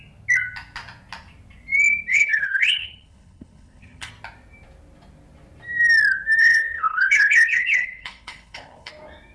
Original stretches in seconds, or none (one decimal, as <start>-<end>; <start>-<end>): 0.0-2.1; 4.1-6.4; 8.9-9.3